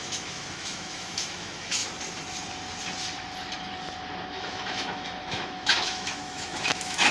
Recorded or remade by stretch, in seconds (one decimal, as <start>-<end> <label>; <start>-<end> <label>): 0.0-1.8 remade; 1.8-4.3 recorded; 4.3-7.1 remade